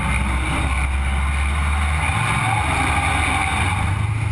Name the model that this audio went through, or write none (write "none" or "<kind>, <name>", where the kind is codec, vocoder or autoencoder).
none